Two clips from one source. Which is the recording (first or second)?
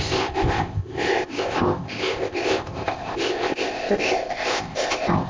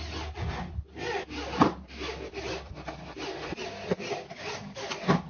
second